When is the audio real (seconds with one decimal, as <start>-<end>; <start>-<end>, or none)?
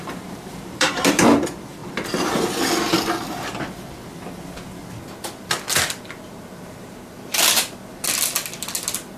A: 1.8-6.3; 7.3-9.2